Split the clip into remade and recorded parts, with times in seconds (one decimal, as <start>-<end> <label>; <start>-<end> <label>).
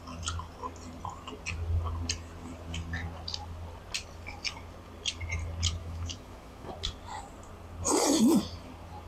0.0-5.8 recorded; 5.8-6.7 remade; 6.7-9.1 recorded